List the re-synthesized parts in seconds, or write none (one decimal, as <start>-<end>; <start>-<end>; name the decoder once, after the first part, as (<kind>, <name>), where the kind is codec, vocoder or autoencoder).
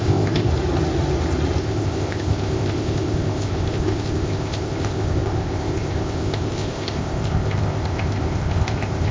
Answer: 0.0-0.5 (codec, ZipCodec); 1.6-9.1